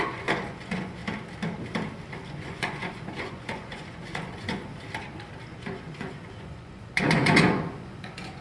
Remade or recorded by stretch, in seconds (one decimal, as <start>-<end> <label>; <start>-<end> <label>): 0.0-1.0 remade; 1.0-2.3 recorded; 2.3-4.7 remade; 4.7-5.5 recorded; 5.5-8.4 remade

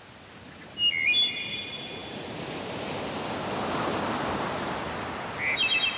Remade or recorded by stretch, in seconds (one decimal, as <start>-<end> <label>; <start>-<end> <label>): 0.0-6.0 recorded